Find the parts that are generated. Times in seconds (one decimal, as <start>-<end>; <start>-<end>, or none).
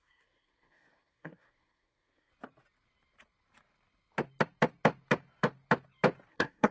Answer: 0.0-2.3; 6.3-6.7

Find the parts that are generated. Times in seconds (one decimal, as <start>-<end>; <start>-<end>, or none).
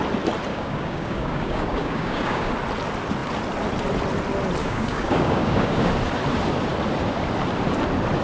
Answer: 0.5-2.5; 4.6-5.9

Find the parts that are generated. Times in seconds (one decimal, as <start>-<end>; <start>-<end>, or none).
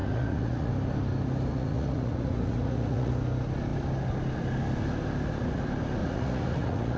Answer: 0.0-0.7; 1.5-3.1; 6.0-7.0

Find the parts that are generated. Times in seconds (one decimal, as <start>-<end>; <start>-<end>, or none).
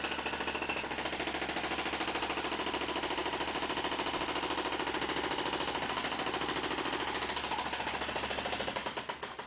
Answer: none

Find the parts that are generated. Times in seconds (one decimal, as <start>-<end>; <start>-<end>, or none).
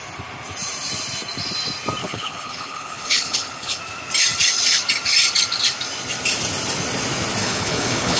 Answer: 2.0-3.8; 7.4-8.2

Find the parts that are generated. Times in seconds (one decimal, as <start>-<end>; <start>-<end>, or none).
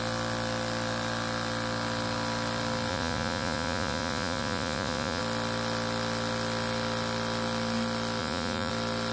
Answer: 2.9-5.2; 8.2-8.7